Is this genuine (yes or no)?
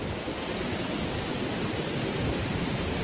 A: yes